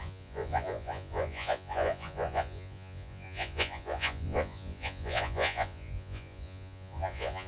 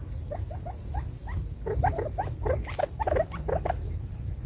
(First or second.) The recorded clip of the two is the second